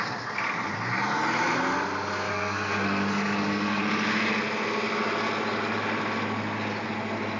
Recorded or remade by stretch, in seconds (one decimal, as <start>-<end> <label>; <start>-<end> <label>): 0.0-2.3 recorded; 2.3-3.8 remade; 3.8-7.4 recorded